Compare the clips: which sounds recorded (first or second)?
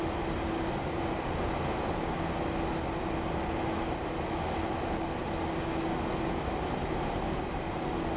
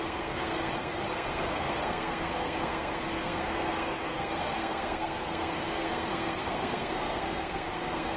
first